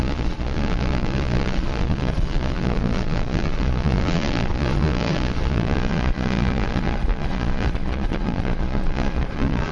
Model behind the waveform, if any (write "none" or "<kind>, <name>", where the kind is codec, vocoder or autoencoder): vocoder, Vocos